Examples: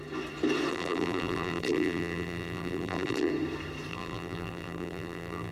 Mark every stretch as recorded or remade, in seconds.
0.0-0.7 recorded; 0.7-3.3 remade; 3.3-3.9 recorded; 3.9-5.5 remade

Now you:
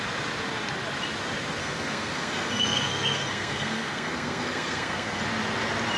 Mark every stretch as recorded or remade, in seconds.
0.0-1.6 recorded; 1.6-5.2 remade; 5.2-6.0 recorded

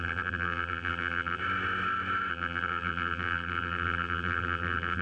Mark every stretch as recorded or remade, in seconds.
0.0-1.4 remade; 1.4-2.3 recorded; 2.3-5.0 remade

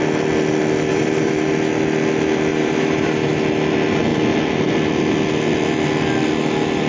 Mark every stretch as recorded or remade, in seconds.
0.0-0.9 recorded; 0.9-1.5 remade; 1.5-2.5 recorded; 2.5-3.3 remade; 3.3-6.9 recorded

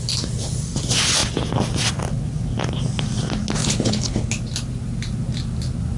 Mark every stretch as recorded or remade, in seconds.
0.0-3.6 recorded; 3.6-4.3 remade; 4.3-6.0 recorded

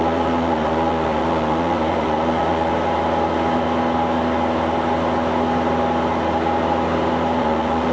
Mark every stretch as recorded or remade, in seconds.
0.0-2.7 remade; 2.7-7.4 recorded; 7.4-7.9 remade

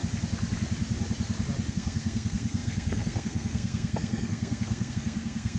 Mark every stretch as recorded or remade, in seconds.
0.0-1.7 recorded; 1.7-5.6 remade

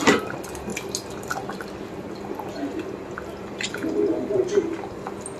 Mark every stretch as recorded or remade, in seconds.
0.0-5.4 recorded